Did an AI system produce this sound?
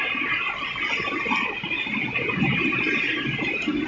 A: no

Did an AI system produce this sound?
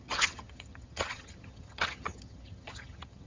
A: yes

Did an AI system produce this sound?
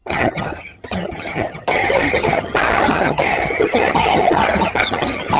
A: yes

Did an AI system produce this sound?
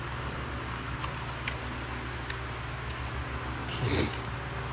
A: no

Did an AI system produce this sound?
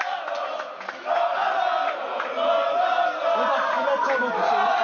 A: no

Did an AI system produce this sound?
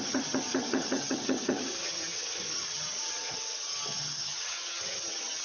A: yes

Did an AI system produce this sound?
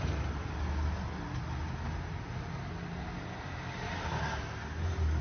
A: no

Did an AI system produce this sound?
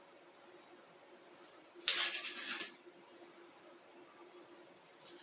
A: no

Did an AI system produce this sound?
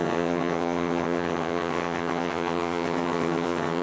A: yes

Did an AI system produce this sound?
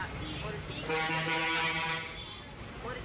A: no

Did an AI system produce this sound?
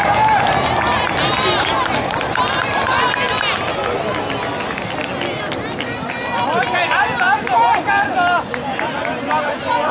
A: no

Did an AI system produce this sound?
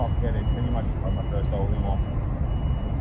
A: no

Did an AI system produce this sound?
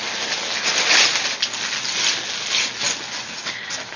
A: no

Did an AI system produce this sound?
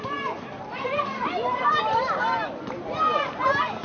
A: no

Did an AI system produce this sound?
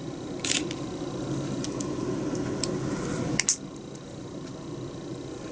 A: no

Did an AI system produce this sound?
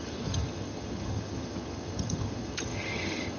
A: yes